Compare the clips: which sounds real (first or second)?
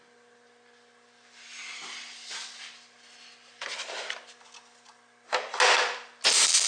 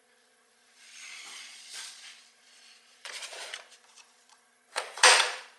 first